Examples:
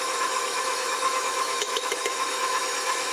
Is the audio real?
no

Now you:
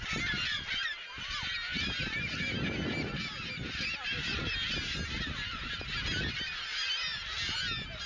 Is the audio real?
yes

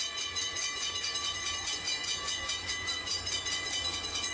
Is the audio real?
no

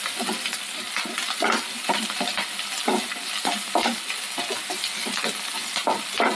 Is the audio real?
yes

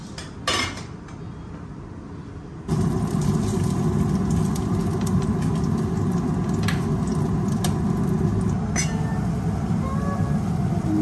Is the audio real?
yes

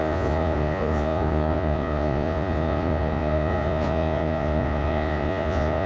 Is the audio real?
no